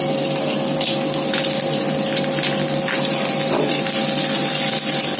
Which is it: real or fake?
real